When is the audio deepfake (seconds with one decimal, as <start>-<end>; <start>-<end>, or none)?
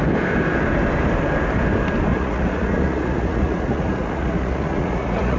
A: 2.1-5.4